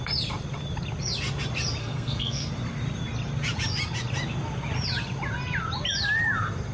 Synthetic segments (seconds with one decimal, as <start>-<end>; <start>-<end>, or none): 1.8-2.5